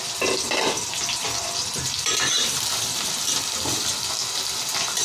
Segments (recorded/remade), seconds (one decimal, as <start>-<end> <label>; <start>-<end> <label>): 0.0-0.9 recorded; 0.9-3.9 remade; 3.9-5.0 recorded

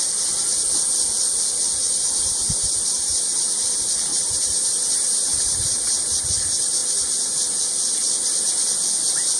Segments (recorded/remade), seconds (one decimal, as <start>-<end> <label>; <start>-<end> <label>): 0.0-1.8 recorded; 1.8-3.4 remade; 3.4-4.1 recorded; 4.1-6.2 remade; 6.2-9.4 recorded

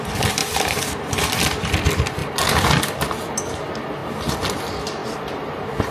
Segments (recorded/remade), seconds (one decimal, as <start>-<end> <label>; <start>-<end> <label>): 0.0-0.4 recorded; 0.4-1.7 remade; 1.7-5.0 recorded; 5.0-5.9 remade

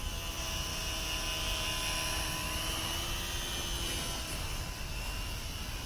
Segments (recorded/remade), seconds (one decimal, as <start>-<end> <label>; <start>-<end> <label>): 0.0-5.9 recorded

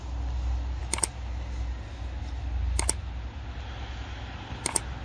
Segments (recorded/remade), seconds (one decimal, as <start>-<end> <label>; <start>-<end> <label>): 0.0-5.0 recorded

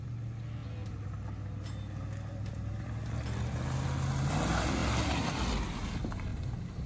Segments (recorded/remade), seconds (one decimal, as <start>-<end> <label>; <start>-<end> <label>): 0.0-0.6 remade; 0.6-4.3 recorded; 4.3-6.3 remade; 6.3-6.9 recorded

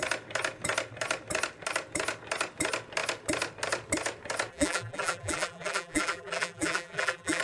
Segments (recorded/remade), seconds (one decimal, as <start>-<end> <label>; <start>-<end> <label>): 0.0-4.5 recorded; 4.5-7.4 remade